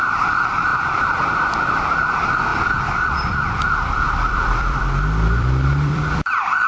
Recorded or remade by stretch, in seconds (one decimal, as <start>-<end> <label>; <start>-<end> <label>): 0.0-2.5 recorded; 2.5-6.7 remade